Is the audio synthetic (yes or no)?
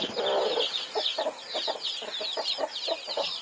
no